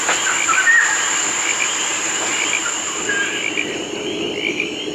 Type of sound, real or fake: real